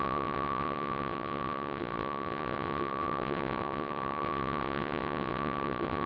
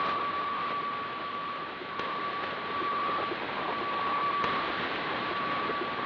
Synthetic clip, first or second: first